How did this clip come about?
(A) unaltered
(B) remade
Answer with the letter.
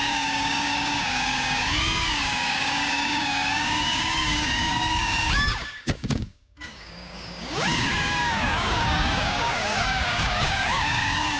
B